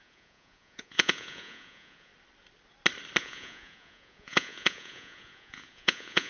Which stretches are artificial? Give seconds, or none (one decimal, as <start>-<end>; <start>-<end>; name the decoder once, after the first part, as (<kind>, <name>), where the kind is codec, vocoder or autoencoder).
0.0-2.1 (vocoder, Vocos); 3.2-6.3

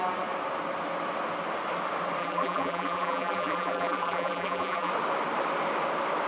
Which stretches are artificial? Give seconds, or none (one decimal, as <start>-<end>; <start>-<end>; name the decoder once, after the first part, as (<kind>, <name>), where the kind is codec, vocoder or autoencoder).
2.2-4.9 (vocoder, BigVGAN v2)

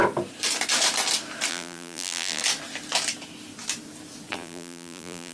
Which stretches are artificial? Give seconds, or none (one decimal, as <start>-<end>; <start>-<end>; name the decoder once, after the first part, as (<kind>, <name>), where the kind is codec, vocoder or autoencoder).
1.5-2.4 (vocoder, BigVGAN v2); 4.3-5.3

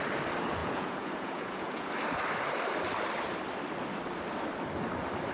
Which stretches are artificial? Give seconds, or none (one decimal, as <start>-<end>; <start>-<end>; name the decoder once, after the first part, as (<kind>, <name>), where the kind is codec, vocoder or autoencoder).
0.6-1.9 (vocoder, Vocos)

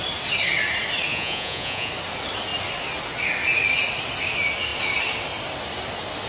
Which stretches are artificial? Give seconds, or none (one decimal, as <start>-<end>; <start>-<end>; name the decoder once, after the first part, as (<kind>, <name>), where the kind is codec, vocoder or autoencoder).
1.1-1.9 (vocoder, Vocos)

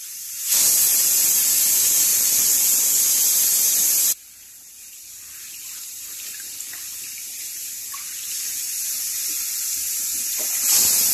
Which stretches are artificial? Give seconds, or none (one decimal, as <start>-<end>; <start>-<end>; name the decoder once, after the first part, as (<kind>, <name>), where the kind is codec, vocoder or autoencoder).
2.1-2.8 (vocoder, BigVGAN v2); 5.8-6.5

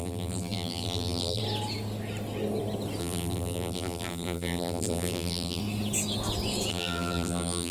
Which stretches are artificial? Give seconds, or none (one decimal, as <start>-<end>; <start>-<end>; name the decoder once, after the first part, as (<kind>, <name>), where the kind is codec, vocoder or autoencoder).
0.0-1.4 (vocoder, BigVGAN v2); 3.0-5.6; 6.7-7.7

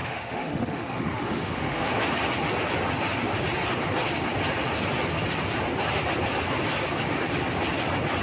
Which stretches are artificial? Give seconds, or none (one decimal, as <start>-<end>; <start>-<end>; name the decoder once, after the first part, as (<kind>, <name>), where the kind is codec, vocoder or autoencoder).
0.0-1.9 (autoencoder, DAC-VAE)